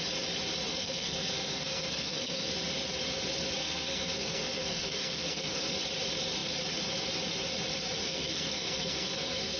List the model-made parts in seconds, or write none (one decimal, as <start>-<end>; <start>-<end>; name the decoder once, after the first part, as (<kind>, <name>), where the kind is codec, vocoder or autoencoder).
0.7-2.5 (codec, SNAC); 3.6-5.7; 8.0-9.6